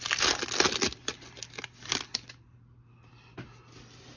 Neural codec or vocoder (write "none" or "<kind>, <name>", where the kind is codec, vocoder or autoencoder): none